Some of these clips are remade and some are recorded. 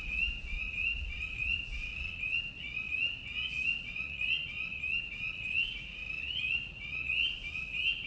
remade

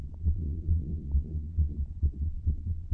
remade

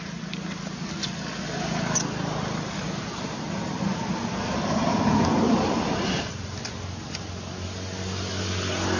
recorded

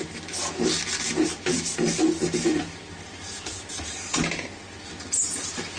recorded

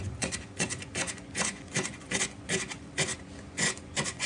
remade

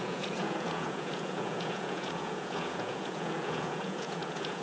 remade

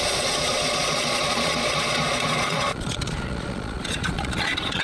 remade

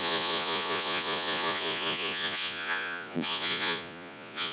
remade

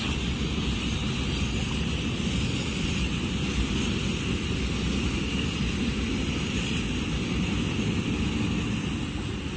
recorded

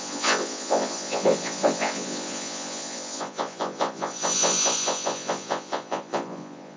remade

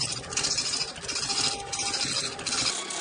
recorded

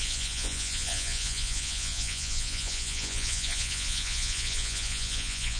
remade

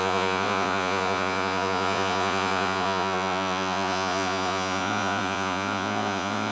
remade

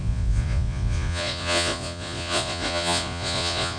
remade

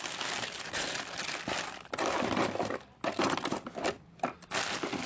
recorded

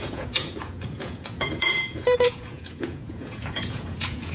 remade